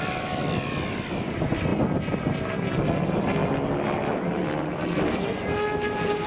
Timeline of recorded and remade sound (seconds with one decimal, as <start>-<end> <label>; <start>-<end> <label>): 0.0-6.3 recorded